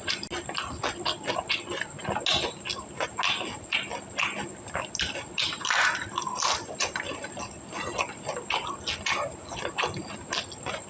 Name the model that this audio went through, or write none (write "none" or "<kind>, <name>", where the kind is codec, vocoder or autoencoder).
none